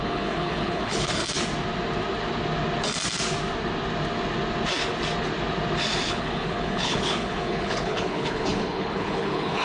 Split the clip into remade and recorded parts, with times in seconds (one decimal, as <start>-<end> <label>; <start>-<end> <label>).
0.0-1.2 remade; 1.2-6.1 recorded; 6.1-9.6 remade